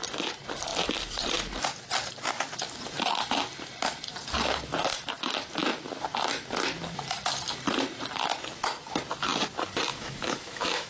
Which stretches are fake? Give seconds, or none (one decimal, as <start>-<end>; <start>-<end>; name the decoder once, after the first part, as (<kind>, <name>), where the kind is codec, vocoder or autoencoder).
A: 9.9-10.9 (autoencoder, DAC-VAE)